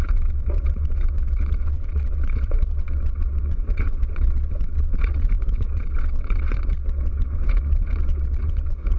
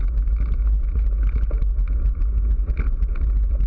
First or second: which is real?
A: second